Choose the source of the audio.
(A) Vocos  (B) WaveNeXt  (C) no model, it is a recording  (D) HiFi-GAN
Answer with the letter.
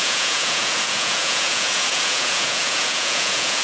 A